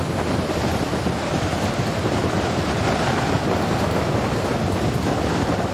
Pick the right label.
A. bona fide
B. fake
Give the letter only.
A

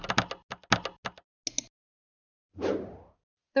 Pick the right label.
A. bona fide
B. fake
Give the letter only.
A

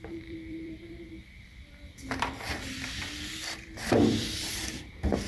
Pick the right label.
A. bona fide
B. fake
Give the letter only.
B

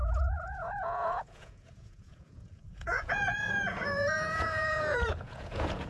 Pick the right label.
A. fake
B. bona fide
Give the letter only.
A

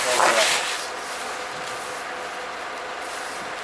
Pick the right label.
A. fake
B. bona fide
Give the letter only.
B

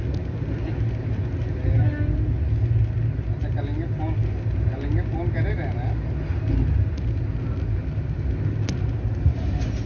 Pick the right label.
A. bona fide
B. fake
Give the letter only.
A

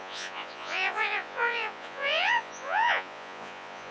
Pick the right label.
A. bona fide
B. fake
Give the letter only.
B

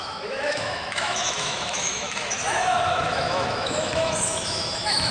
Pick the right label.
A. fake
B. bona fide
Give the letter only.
A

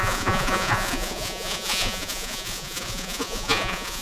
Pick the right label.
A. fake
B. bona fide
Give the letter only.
A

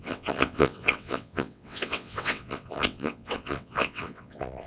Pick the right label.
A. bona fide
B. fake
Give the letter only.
B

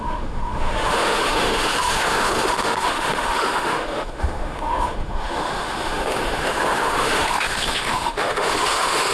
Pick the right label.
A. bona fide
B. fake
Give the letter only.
B